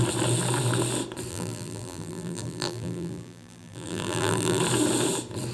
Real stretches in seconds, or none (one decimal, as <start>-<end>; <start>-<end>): 0.0-1.3; 4.6-5.5